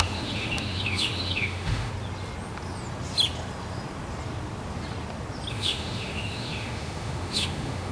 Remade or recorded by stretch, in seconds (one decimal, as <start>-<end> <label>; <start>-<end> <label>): 0.0-1.9 remade; 1.9-5.5 recorded; 5.5-7.9 remade